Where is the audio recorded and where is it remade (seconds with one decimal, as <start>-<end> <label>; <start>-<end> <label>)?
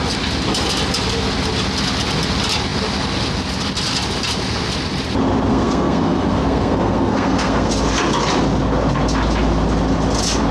0.0-5.5 recorded; 5.5-7.7 remade; 7.7-10.5 recorded